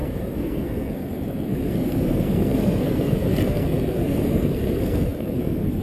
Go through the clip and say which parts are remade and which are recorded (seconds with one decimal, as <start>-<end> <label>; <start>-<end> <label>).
0.0-5.8 remade